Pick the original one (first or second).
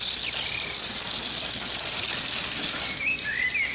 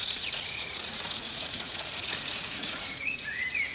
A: first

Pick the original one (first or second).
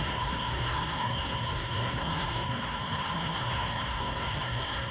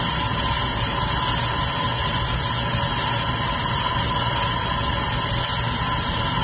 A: second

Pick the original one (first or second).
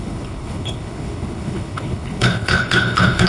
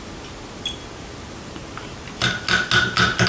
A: second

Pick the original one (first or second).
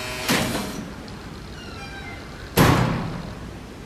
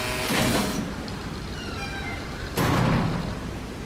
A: first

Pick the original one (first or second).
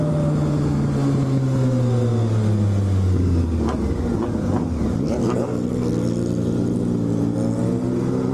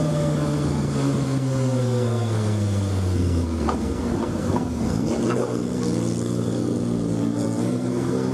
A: first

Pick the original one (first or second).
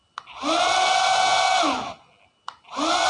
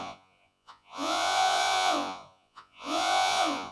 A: first